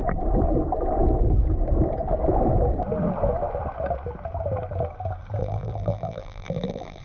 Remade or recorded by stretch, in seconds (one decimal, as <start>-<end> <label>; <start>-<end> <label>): 0.0-5.4 recorded; 5.4-7.0 remade

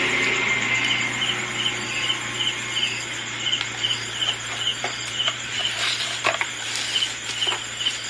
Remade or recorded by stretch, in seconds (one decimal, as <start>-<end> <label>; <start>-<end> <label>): 0.0-4.7 recorded; 4.7-6.6 remade; 6.6-8.1 recorded

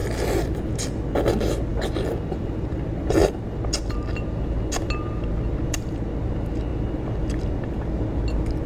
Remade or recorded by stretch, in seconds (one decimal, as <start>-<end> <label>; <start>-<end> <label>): 0.0-8.7 recorded

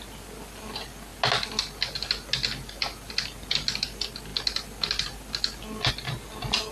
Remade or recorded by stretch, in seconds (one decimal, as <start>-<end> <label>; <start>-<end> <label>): 0.0-6.7 recorded

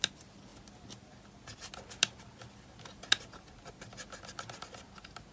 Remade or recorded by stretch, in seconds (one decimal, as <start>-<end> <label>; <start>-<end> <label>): 0.0-5.3 recorded